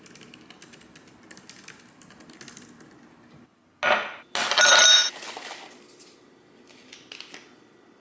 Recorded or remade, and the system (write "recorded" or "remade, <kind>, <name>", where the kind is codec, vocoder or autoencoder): recorded